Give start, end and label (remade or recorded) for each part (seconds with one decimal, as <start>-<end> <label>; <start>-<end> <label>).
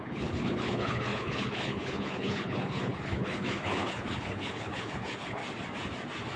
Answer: 0.0-5.4 remade; 5.4-6.4 recorded